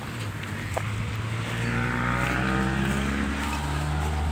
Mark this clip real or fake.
real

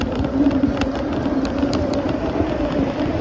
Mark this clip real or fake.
real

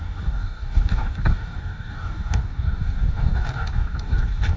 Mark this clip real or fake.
fake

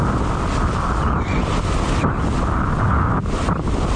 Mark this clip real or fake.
real